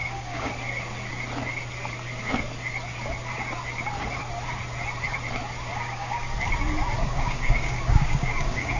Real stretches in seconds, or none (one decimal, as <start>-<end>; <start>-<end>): 0.5-5.7; 6.3-7.0